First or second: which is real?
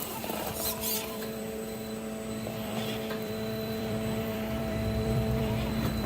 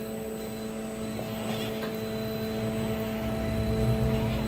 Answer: second